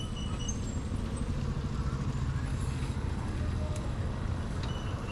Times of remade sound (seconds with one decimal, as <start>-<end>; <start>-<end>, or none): 2.5-4.6